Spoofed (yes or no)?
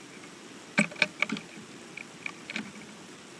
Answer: no